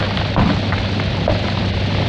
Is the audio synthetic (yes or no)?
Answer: no